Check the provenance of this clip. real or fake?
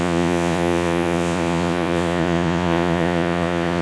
fake